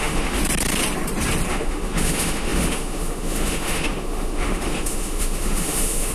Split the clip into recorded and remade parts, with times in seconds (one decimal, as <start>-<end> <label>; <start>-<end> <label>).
0.0-0.4 remade; 0.4-1.5 recorded; 1.5-6.1 remade